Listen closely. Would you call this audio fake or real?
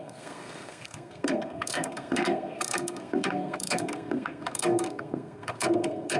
fake